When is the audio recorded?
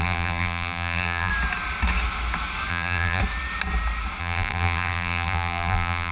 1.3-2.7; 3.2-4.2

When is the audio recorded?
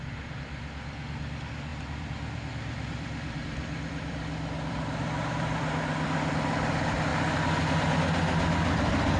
0.0-1.7; 6.3-7.1; 7.9-9.2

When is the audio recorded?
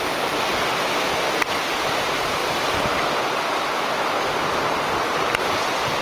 0.0-6.0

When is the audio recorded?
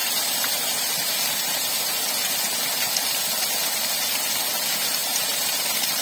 0.9-5.0